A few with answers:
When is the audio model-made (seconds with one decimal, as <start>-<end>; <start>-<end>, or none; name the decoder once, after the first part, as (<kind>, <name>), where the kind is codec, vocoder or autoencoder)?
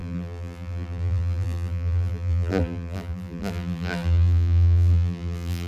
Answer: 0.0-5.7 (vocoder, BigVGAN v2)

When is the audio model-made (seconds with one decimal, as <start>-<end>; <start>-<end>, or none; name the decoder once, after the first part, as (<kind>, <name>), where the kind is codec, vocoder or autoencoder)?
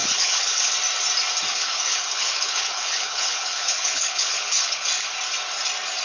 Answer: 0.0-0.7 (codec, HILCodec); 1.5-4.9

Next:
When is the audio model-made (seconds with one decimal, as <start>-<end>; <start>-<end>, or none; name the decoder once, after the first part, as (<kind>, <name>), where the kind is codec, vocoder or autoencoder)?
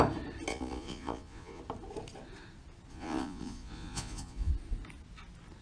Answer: 0.5-1.6 (vocoder, Vocos); 2.9-4.5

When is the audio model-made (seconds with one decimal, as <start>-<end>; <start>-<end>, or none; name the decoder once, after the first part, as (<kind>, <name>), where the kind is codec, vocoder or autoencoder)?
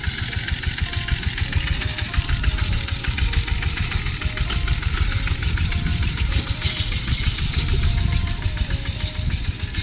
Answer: 1.9-3.1 (vocoder, BigVGAN v2); 5.9-8.7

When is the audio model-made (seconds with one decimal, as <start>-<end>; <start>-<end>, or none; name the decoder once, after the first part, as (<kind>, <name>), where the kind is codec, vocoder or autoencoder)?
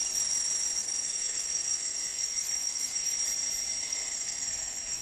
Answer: 0.8-3.2 (codec, SNAC); 3.8-5.0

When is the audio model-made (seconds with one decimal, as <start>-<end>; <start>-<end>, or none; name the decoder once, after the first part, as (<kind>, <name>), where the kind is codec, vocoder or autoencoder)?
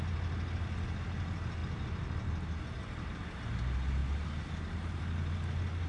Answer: none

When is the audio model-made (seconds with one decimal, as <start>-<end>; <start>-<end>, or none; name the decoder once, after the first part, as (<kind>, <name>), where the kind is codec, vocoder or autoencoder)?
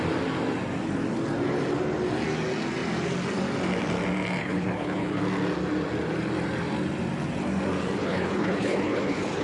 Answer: 4.4-5.2 (codec, HILCodec); 8.0-9.4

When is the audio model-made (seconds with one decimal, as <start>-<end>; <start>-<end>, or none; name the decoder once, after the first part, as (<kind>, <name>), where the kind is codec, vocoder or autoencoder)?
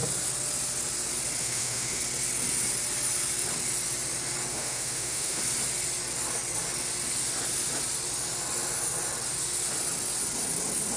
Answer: 1.4-2.0 (autoencoder, DAC-VAE); 4.5-5.4